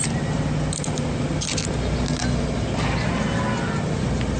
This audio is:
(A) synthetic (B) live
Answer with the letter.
B